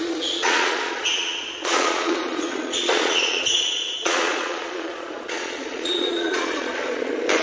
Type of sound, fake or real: fake